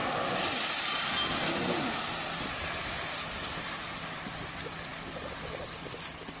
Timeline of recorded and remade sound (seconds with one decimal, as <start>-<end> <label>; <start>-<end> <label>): 0.0-6.4 recorded